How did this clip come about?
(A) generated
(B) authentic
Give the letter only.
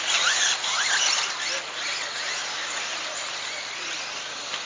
B